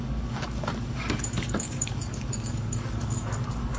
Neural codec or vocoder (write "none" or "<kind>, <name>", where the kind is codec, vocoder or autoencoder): codec, DAC